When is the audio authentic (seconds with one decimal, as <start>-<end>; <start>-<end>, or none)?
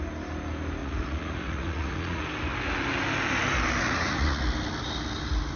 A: 0.0-0.8; 2.2-3.8; 4.4-5.6